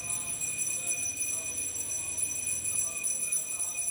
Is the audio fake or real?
fake